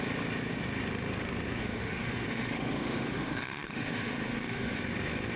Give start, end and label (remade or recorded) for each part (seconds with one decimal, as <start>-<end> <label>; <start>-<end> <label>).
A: 0.0-1.6 recorded; 1.6-4.8 remade; 4.8-5.4 recorded